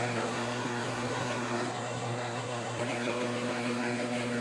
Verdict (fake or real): fake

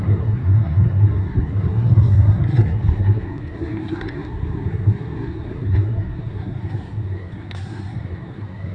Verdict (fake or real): fake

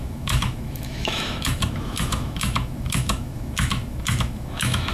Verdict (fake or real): fake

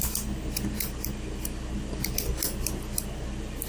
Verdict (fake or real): real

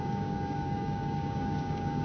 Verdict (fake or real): fake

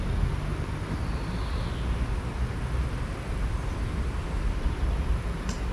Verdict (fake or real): real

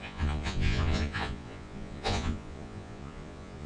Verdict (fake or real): fake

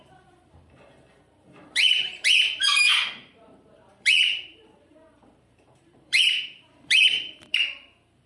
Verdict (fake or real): fake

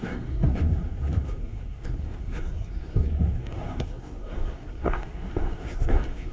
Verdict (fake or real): fake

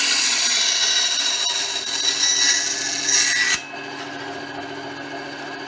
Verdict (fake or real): real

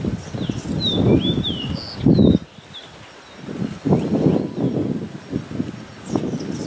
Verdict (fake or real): real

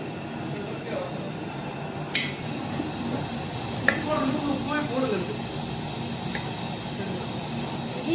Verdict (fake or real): real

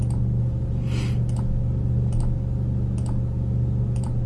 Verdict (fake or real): real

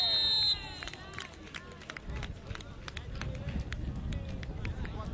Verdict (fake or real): real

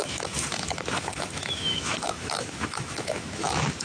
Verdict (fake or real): fake